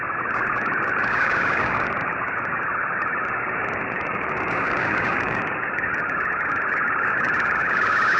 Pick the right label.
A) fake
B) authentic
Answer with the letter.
A